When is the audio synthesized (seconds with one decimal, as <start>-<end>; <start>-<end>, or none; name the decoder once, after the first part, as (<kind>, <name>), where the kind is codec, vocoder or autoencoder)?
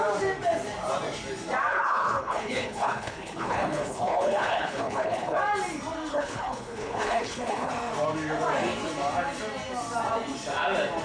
1.7-5.4 (codec, HILCodec); 6.1-7.7